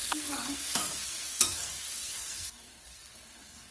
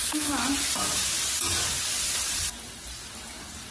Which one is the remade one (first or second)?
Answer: first